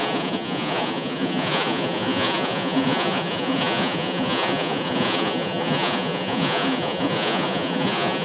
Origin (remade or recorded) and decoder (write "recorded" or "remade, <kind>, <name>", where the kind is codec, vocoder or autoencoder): remade, vocoder, Vocos